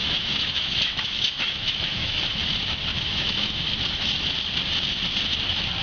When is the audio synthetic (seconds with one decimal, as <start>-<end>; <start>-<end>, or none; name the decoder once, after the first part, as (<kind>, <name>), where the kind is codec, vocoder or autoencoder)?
0.0-2.2 (autoencoder, DAC-VAE); 2.9-3.7